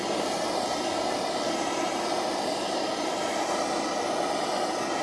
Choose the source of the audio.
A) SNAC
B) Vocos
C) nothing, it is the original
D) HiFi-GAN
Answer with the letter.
C